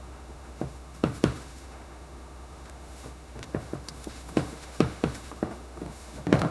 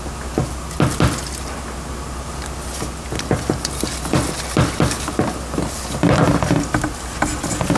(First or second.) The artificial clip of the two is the first